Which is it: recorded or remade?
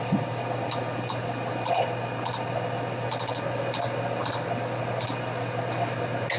recorded